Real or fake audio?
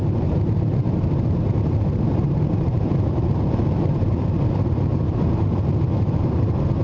fake